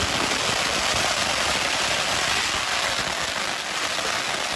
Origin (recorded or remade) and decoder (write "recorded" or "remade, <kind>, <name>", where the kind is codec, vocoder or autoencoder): recorded